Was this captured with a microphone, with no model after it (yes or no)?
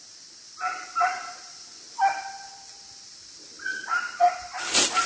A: yes